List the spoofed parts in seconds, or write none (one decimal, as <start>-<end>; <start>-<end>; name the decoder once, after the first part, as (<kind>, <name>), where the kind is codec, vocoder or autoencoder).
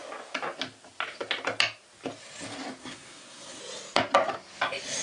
2.8-3.6 (codec, SNAC)